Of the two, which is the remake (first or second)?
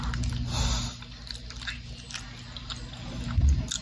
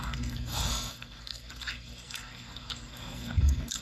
second